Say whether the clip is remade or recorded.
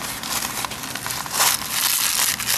recorded